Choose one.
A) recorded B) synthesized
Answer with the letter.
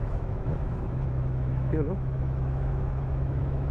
B